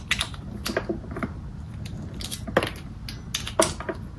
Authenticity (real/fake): real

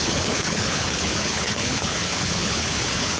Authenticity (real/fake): fake